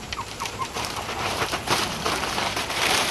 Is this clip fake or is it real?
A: fake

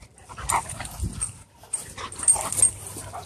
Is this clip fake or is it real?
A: real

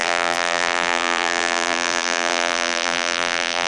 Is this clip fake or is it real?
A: fake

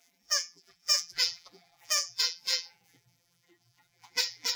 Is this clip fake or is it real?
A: fake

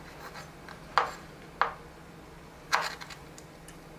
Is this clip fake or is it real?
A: real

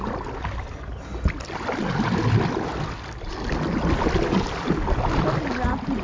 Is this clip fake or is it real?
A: real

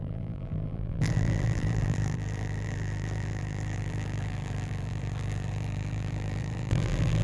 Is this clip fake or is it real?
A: fake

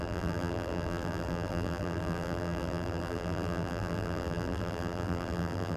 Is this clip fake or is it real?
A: fake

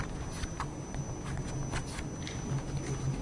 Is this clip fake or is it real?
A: real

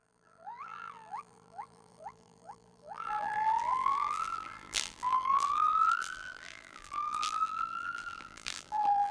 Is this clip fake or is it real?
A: fake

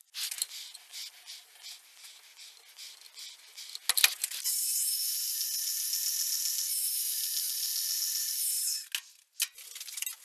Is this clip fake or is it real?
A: real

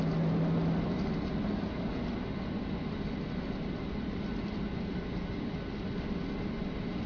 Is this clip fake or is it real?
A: real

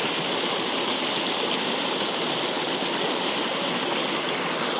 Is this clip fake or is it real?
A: real